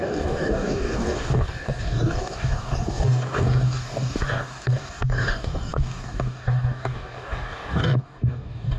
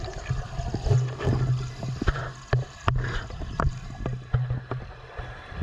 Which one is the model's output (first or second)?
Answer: first